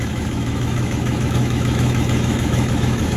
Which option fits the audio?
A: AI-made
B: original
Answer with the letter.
A